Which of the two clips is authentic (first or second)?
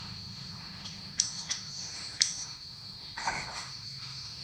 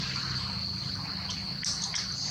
second